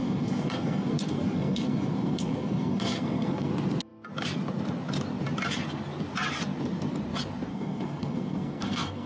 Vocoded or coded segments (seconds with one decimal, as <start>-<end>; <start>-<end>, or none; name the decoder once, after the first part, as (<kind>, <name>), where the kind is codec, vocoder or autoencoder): 0.0-3.5 (codec, SNAC); 7.5-9.1